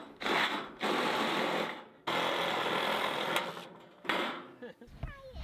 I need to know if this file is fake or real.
real